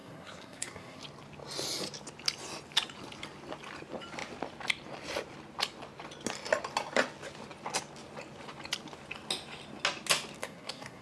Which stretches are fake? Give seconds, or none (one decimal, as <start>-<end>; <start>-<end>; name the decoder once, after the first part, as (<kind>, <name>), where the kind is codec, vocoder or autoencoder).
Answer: 0.0-1.0 (codec, SNAC); 10.4-11.0